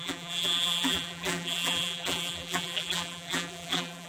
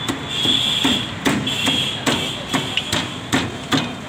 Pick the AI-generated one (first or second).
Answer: first